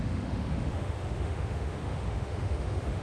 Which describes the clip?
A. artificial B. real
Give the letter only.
A